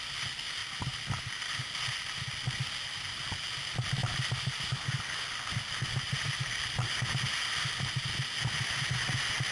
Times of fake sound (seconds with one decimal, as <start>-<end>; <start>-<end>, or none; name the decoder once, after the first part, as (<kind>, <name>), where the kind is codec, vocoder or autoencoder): none